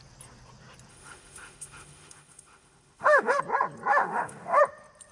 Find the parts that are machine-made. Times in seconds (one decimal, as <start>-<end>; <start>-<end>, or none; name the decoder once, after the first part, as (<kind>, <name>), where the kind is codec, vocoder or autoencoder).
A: 0.9-3.4 (autoencoder, DAC-VAE); 3.9-4.6